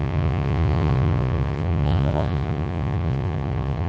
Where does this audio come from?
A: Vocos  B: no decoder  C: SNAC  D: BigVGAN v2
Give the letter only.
A